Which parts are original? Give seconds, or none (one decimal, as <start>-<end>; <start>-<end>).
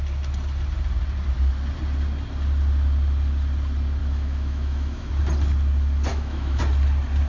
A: 0.0-4.0; 5.1-6.1; 6.6-7.3